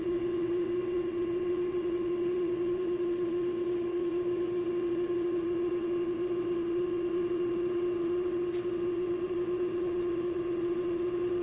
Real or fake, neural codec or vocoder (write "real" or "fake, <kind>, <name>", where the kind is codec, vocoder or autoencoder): fake, vocoder, WaveNeXt